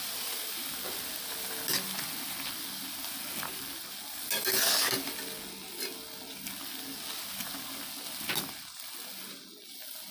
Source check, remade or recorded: recorded